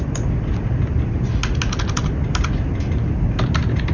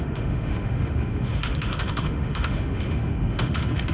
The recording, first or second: first